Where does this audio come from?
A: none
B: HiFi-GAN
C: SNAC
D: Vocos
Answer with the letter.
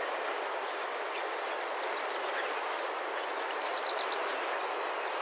A